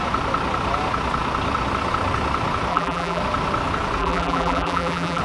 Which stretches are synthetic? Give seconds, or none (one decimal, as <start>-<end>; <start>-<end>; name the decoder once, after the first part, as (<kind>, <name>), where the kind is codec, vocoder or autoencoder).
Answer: 2.7-3.2 (vocoder, BigVGAN v2); 4.0-5.2